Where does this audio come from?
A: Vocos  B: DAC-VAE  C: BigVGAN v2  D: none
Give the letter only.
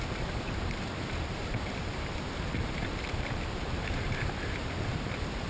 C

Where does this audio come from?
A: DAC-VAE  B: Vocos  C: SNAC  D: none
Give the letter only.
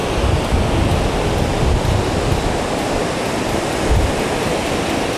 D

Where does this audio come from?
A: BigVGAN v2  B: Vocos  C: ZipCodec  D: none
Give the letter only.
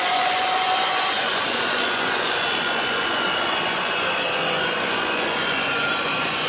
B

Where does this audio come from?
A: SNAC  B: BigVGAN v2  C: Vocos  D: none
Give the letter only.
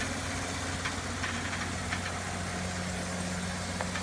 D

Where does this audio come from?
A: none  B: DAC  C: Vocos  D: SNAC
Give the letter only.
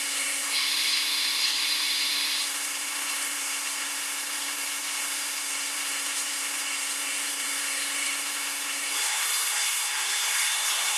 D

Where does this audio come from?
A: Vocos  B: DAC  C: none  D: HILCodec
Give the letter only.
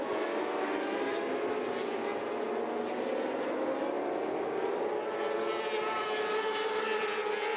C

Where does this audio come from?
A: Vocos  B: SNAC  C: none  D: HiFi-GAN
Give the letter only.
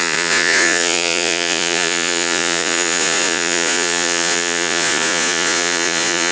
A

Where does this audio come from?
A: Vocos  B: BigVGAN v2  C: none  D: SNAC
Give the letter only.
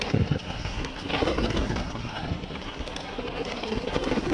D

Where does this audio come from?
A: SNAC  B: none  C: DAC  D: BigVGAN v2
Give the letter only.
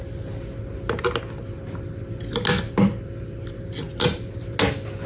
B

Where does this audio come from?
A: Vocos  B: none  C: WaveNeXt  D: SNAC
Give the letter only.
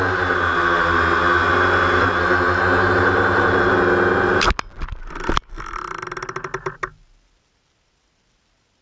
B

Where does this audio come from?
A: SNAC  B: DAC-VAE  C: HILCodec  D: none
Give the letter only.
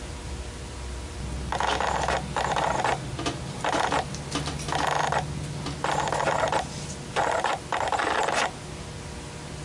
D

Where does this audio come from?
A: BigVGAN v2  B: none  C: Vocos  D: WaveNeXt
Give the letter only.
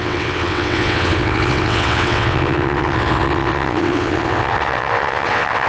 D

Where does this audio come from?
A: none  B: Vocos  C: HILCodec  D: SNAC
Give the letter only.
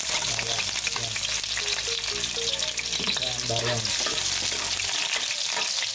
A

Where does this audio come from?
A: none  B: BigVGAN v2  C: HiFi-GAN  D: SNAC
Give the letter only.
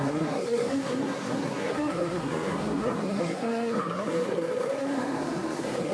D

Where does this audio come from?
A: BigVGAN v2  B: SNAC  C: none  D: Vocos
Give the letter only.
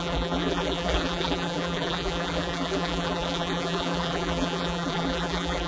A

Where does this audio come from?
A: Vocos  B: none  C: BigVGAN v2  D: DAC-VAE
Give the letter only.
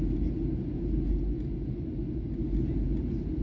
B